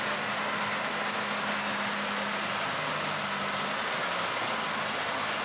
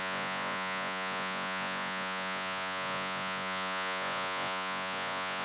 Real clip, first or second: first